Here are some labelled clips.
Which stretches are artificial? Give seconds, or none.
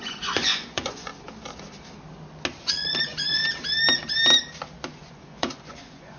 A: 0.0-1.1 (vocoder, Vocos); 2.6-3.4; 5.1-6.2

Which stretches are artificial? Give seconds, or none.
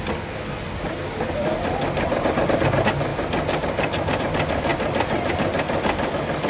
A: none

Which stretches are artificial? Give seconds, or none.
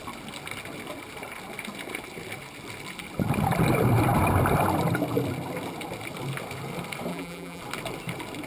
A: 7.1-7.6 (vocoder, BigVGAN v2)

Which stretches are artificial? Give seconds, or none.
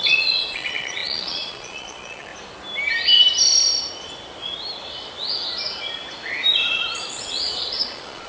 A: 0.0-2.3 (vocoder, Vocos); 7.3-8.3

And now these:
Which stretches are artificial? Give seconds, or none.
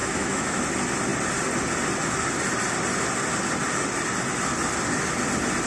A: 0.0-0.6 (autoencoder, DAC-VAE)